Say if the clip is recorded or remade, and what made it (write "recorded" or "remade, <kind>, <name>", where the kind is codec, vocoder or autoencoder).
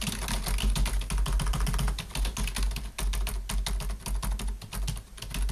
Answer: recorded